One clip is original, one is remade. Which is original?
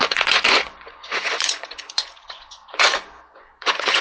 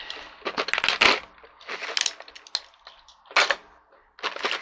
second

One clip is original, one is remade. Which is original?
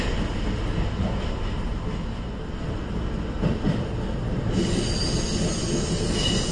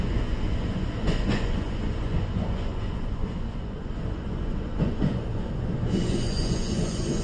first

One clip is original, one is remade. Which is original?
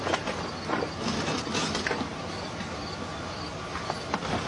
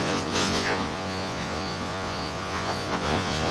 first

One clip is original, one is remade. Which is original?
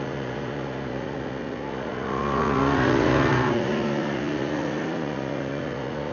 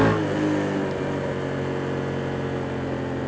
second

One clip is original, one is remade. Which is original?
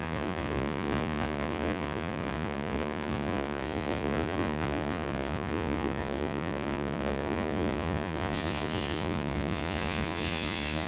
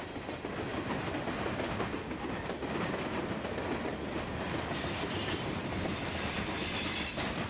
second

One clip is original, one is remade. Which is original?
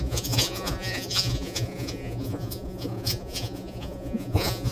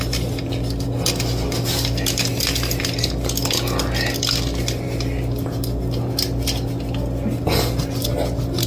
second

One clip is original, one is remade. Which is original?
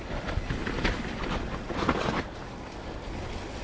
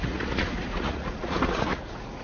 first